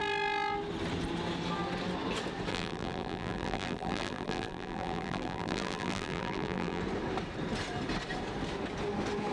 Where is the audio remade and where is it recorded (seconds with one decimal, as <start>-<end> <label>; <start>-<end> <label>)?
0.0-2.5 recorded; 2.5-6.8 remade; 6.8-9.3 recorded